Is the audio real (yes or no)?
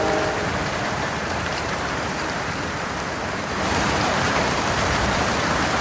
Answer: no